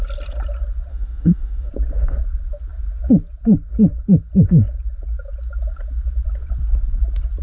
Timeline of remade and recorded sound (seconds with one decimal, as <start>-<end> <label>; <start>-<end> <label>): 0.0-0.9 recorded; 0.9-1.7 remade; 1.7-7.4 recorded

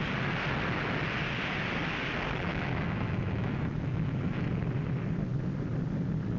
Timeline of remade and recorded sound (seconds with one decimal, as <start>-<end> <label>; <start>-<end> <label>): 0.0-2.5 recorded; 2.5-4.5 remade; 4.5-6.4 recorded

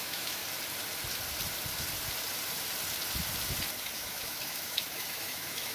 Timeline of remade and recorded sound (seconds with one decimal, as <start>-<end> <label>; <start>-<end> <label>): 0.0-0.4 remade; 0.4-3.8 recorded; 3.8-5.7 remade

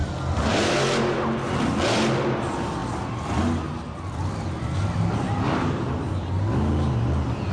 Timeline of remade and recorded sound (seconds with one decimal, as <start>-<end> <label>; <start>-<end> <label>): 0.0-7.5 recorded

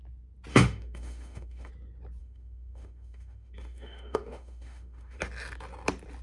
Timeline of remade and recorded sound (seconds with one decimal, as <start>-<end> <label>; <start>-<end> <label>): 0.0-0.5 recorded; 0.5-1.7 remade; 1.7-2.2 recorded; 2.2-5.2 remade; 5.2-6.2 recorded

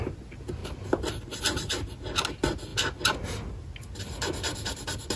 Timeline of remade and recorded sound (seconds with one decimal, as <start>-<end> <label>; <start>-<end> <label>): 0.0-5.2 recorded

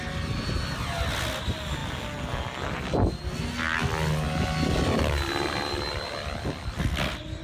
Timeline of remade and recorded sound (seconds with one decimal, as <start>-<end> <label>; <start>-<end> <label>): 0.0-7.4 recorded

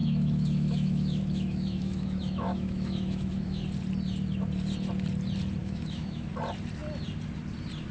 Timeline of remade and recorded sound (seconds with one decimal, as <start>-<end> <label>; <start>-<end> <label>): 0.0-3.6 remade; 3.6-5.6 recorded; 5.6-6.3 remade; 6.3-7.9 recorded